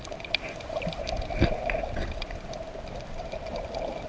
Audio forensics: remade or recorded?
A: recorded